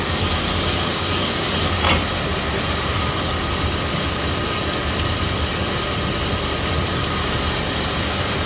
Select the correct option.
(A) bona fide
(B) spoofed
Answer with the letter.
A